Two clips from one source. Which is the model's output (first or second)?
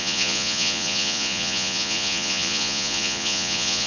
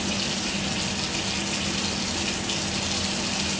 first